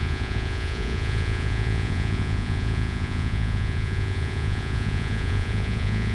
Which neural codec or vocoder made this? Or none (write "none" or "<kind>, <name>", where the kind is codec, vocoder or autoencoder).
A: vocoder, Vocos